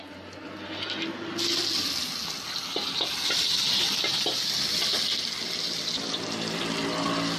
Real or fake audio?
real